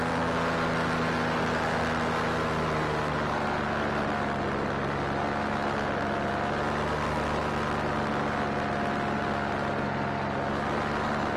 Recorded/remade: recorded